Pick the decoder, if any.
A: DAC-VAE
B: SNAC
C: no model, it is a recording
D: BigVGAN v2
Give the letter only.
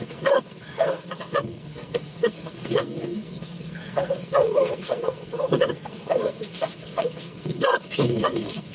B